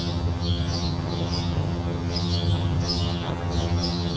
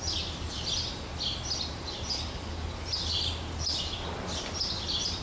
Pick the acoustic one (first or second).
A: second